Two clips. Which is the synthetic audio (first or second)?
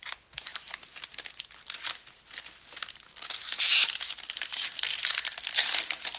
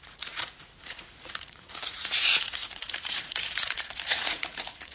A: second